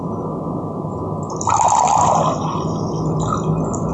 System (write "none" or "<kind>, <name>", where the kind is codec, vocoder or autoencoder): none